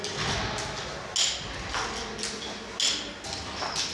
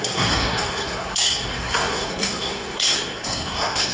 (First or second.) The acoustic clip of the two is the first